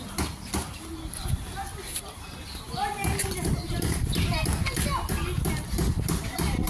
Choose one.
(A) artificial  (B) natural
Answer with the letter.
B